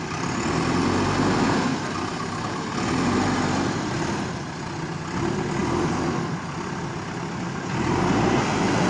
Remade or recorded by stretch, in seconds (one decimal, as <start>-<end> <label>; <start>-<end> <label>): 0.0-8.9 recorded

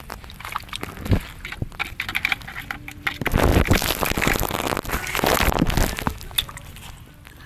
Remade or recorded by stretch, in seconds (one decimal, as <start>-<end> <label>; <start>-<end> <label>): 0.0-7.5 recorded

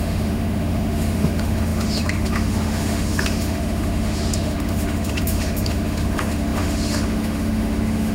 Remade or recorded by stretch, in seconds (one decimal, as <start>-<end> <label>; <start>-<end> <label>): 0.0-8.1 remade

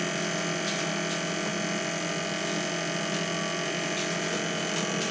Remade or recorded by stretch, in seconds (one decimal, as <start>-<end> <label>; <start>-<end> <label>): 0.0-5.1 recorded

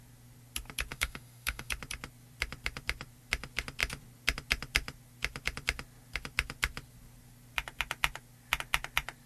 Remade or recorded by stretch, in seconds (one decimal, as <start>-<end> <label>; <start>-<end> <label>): 0.0-0.9 recorded; 0.9-1.7 remade; 1.7-9.3 recorded

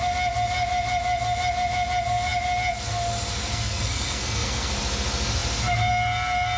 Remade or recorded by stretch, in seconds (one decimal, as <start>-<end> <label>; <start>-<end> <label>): 0.0-3.5 recorded; 3.5-4.8 remade; 4.8-6.6 recorded

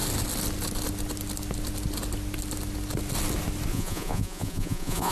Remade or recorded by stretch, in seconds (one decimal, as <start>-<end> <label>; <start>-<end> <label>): 0.0-3.7 recorded; 3.7-5.1 remade